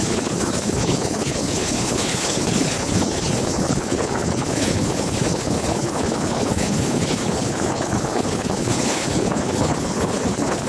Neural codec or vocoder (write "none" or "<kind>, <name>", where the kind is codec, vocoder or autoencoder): codec, HILCodec